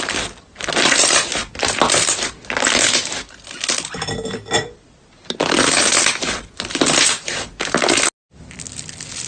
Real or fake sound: real